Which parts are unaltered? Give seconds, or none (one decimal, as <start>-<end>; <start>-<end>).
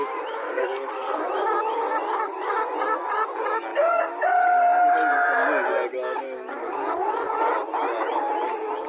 0.0-0.4; 1.3-8.9